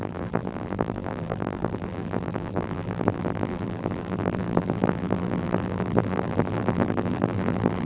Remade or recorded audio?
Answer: remade